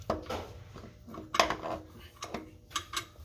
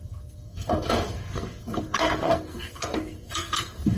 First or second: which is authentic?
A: first